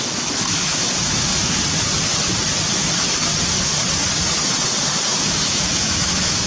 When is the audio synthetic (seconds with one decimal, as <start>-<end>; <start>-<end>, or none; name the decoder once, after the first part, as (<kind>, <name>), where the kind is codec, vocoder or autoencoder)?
0.0-1.3 (autoencoder, DAC-VAE); 5.2-6.5